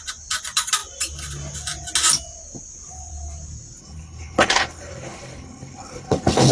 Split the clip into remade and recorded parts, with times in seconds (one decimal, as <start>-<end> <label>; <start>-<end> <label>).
0.0-3.8 recorded; 3.8-6.5 remade

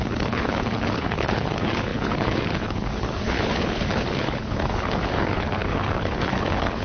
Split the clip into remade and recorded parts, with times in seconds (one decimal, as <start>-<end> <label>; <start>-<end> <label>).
0.0-6.8 remade

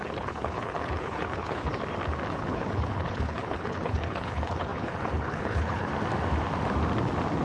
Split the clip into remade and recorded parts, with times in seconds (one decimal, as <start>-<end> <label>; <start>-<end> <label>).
0.0-1.7 remade; 1.7-2.3 recorded; 2.3-5.9 remade; 5.9-7.4 recorded

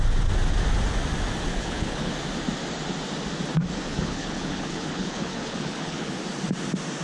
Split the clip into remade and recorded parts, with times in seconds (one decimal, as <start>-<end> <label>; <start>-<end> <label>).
0.0-1.5 recorded; 1.5-2.1 remade; 2.1-3.9 recorded; 3.9-6.2 remade; 6.2-7.0 recorded